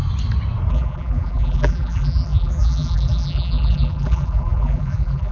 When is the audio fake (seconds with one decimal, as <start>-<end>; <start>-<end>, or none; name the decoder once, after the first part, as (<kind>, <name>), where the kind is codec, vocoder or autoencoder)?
0.7-5.3 (vocoder, BigVGAN v2)

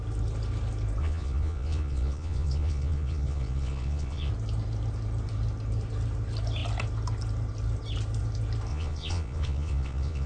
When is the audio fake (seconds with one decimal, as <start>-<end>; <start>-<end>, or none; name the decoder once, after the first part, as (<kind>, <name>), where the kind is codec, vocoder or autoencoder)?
1.0-4.3 (vocoder, Vocos); 8.7-10.3